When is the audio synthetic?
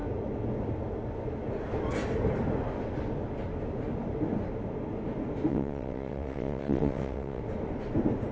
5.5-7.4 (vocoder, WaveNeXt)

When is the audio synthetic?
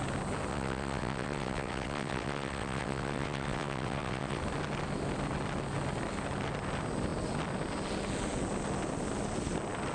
0.5-4.4 (vocoder, WaveNeXt)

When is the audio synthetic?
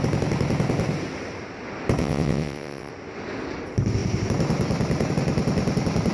2.0-2.9 (vocoder, WaveNeXt)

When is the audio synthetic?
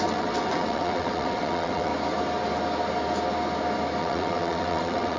0.0-1.9 (vocoder, WaveNeXt); 4.0-5.2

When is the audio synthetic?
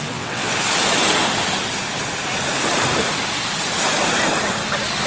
0.0-0.5 (vocoder, WaveNeXt)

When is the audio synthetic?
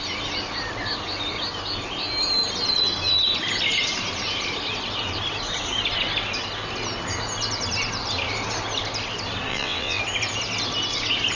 9.5-10.0 (vocoder, WaveNeXt)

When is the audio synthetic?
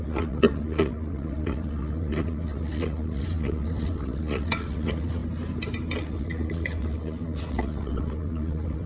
0.0-5.2 (vocoder, WaveNeXt); 6.0-8.9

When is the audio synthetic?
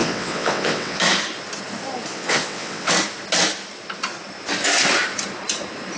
0.0-1.0 (vocoder, WaveNeXt); 2.1-2.9